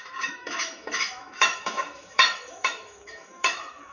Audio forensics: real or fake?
fake